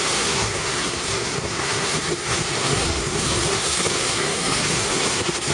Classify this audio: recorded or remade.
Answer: remade